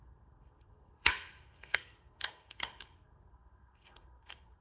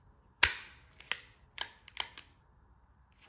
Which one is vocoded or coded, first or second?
first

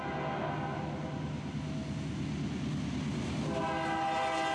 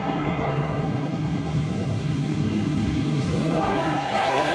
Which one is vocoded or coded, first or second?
second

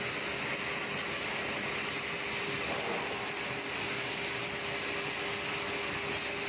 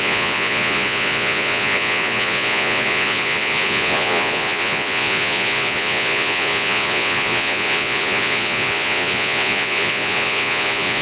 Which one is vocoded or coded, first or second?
second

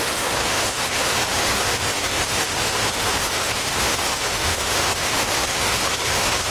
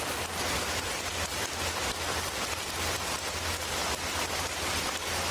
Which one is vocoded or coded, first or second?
first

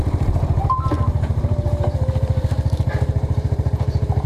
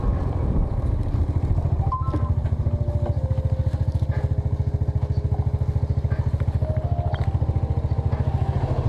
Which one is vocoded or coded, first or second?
first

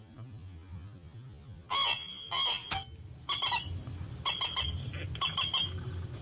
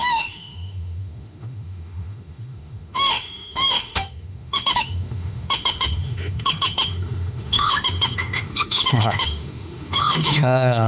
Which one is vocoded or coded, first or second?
second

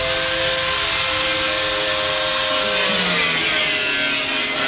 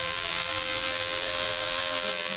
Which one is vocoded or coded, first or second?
second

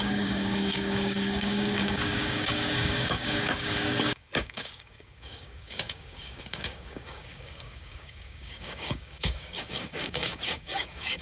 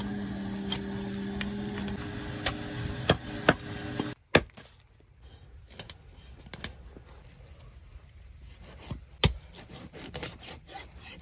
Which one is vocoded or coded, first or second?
first